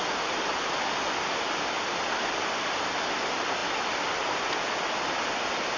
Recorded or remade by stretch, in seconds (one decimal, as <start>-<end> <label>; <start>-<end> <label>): 0.0-5.8 recorded